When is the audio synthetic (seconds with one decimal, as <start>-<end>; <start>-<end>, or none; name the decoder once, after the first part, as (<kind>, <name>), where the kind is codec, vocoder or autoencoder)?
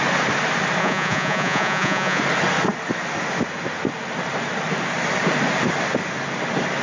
0.8-2.2 (vocoder, Vocos)